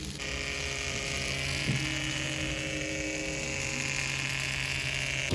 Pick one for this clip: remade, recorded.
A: recorded